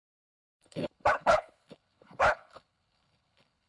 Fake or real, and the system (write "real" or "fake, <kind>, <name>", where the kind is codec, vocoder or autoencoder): fake, codec, HILCodec